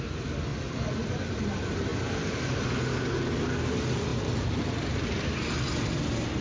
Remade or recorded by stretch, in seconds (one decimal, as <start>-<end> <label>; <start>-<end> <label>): 0.0-0.5 recorded; 0.5-1.4 remade; 1.4-1.9 recorded; 1.9-2.7 remade; 2.7-6.4 recorded